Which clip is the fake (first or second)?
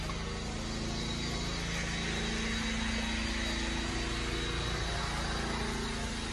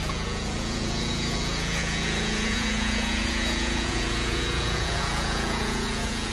second